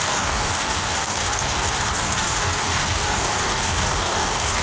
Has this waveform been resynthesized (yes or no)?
yes